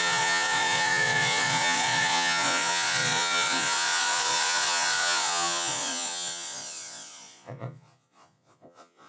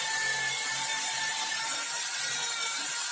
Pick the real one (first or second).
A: second